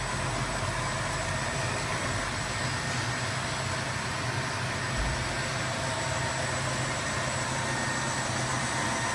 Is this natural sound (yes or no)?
yes